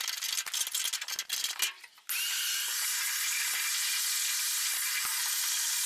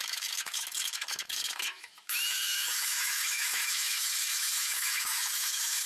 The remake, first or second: second